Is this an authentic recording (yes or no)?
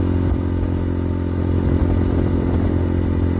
yes